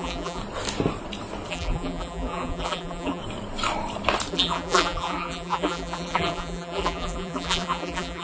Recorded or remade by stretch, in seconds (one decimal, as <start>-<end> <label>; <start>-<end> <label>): 0.0-0.4 remade; 0.4-1.5 recorded; 1.5-3.2 remade; 3.2-4.3 recorded; 4.3-8.2 remade